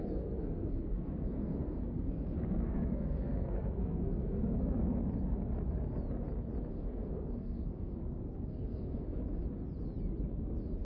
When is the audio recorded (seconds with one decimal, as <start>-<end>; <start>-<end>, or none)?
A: 4.8-6.7; 9.2-10.8